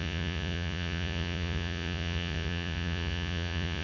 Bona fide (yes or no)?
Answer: no